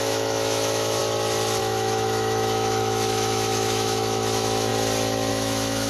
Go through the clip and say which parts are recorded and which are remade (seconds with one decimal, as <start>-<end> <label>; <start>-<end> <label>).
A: 0.0-1.0 remade; 1.0-1.6 recorded; 1.6-4.7 remade; 4.7-5.3 recorded; 5.3-5.9 remade